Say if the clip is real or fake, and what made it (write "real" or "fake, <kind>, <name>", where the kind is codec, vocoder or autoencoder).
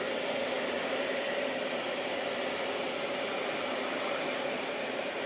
real